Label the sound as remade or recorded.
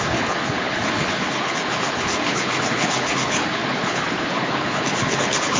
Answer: remade